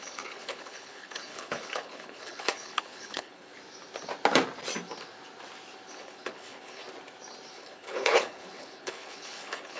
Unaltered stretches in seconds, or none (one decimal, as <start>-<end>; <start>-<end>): 3.5-5.9; 6.8-7.5